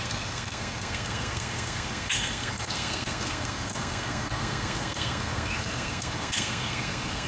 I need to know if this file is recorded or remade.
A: remade